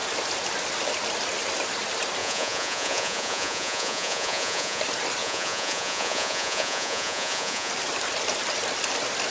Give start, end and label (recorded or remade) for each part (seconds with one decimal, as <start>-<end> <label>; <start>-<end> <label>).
0.0-2.2 recorded; 2.2-4.8 remade; 4.8-5.2 recorded; 5.2-7.7 remade; 7.7-9.3 recorded